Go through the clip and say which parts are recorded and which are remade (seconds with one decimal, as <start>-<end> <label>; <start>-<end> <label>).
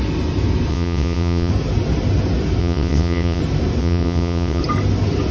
0.0-0.7 recorded; 0.7-1.5 remade; 1.5-2.6 recorded; 2.6-3.4 remade; 3.4-3.8 recorded; 3.8-4.6 remade; 4.6-5.3 recorded